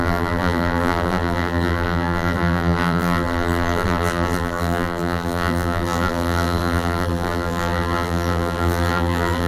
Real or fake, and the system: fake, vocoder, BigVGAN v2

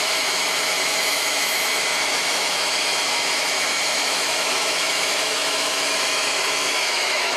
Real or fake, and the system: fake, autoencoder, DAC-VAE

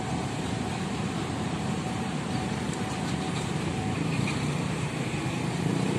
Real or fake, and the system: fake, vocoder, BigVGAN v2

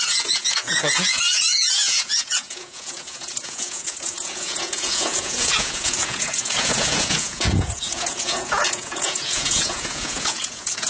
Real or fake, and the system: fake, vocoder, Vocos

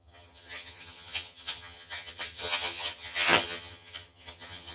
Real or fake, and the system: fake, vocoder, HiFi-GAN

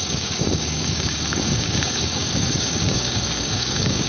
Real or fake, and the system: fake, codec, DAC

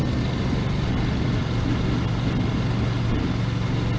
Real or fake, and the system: real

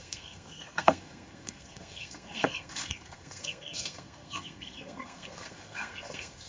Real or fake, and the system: fake, codec, SNAC